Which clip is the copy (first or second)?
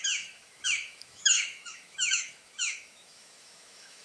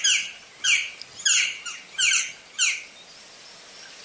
first